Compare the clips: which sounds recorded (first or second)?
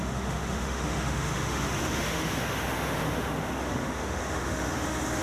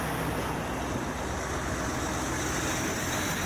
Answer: second